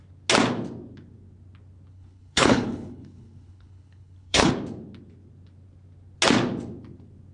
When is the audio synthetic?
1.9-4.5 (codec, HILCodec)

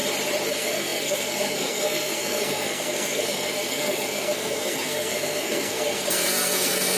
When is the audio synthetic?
0.5-7.0 (codec, SNAC)

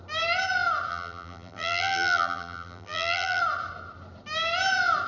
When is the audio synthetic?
0.9-3.4 (vocoder, BigVGAN v2)

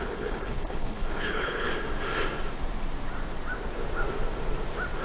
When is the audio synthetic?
0.0-1.7 (codec, HILCodec)

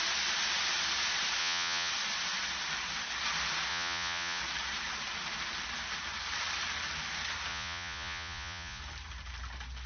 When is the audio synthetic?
1.4-1.9 (vocoder, Vocos); 3.7-4.4; 7.5-8.8